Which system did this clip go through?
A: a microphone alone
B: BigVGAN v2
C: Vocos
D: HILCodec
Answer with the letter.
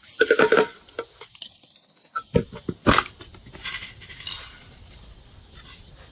A